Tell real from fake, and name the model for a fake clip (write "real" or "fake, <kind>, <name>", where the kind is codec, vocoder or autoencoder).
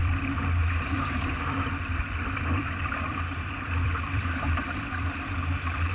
fake, vocoder, BigVGAN v2